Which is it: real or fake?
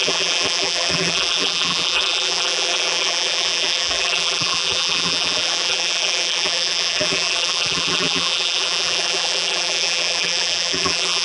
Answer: fake